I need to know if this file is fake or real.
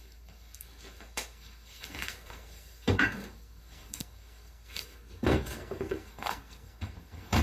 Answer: fake